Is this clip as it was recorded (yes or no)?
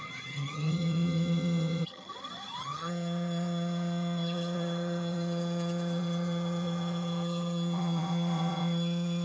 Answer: no